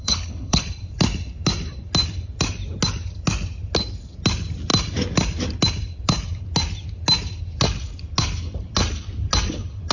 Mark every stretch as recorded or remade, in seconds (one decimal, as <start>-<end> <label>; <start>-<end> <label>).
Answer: 0.0-0.6 remade; 0.6-9.9 recorded

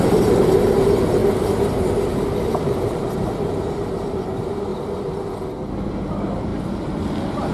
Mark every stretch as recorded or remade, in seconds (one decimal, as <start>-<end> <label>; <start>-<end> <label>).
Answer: 0.0-1.2 remade; 1.2-2.2 recorded; 2.2-4.7 remade; 4.7-6.1 recorded; 6.1-6.5 remade; 6.5-7.5 recorded